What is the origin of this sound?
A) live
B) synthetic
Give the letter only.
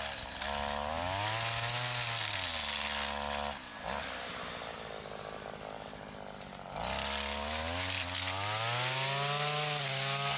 A